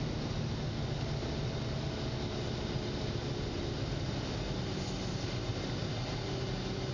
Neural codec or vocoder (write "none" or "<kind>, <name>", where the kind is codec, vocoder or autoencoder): none